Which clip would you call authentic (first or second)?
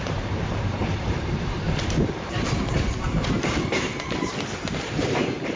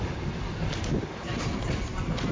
second